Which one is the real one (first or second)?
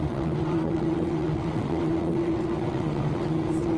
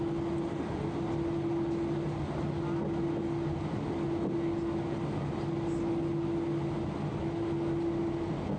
second